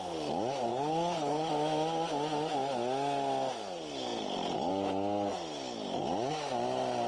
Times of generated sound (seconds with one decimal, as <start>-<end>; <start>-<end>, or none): 0.7-1.5